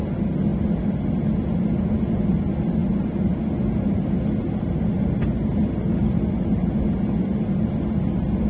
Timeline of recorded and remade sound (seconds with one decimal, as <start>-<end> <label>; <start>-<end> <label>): 0.0-8.5 recorded